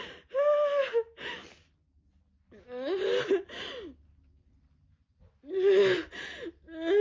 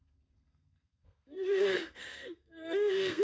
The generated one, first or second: second